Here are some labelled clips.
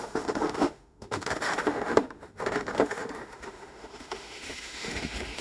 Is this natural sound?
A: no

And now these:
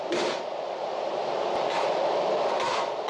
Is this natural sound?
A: yes